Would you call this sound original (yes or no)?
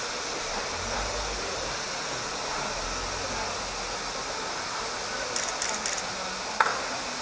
yes